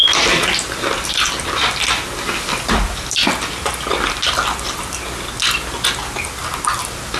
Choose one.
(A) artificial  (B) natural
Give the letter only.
B